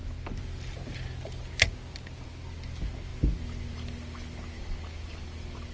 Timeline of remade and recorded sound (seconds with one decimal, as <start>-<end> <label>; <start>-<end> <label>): 0.0-5.7 recorded